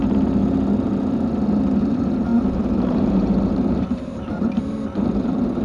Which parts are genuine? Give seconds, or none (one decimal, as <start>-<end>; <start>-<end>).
0.4-1.8